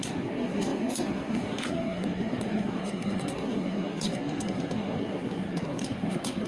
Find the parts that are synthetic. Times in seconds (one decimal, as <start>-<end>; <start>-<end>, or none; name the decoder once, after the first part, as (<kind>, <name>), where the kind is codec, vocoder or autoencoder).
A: 0.0-6.5 (codec, SNAC)